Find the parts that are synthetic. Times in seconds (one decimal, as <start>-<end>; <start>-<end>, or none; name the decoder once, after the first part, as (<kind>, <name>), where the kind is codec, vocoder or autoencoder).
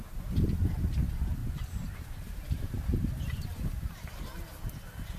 1.4-4.1 (vocoder, BigVGAN v2)